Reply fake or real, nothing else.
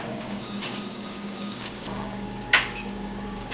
fake